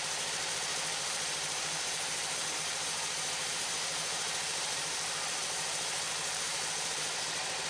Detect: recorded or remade remade